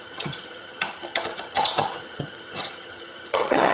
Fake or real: fake